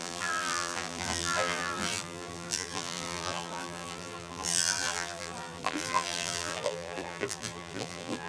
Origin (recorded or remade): remade